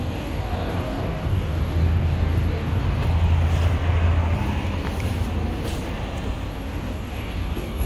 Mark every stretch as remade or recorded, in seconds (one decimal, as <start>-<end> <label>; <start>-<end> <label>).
0.0-2.8 remade; 2.8-6.5 recorded; 6.5-7.9 remade